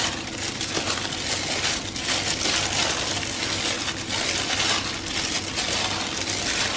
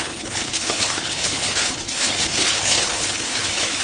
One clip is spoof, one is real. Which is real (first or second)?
first